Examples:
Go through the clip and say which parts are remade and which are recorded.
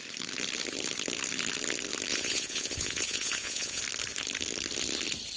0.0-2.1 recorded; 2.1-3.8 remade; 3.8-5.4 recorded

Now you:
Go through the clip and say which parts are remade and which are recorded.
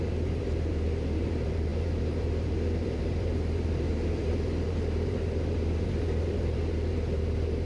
0.0-7.7 remade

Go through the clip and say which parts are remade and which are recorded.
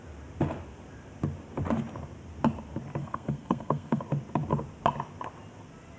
0.0-3.0 recorded; 3.0-4.0 remade; 4.0-6.0 recorded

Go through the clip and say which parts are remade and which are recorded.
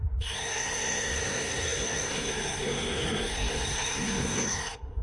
0.0-5.0 remade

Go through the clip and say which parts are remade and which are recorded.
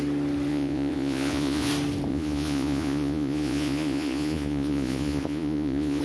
0.0-0.5 recorded; 0.5-1.7 remade; 1.7-2.1 recorded; 2.1-6.0 remade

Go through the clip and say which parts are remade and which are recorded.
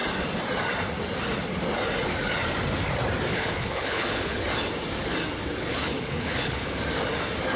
0.0-3.3 recorded; 3.3-4.4 remade; 4.4-5.7 recorded; 5.7-6.8 remade; 6.8-7.6 recorded